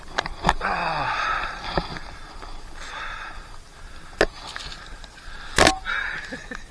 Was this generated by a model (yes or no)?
no